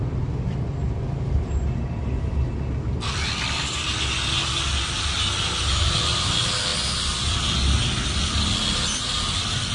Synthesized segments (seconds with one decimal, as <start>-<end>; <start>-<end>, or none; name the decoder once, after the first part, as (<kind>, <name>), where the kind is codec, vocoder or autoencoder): none